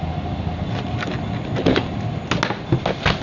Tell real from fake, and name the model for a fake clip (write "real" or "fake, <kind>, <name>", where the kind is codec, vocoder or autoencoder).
real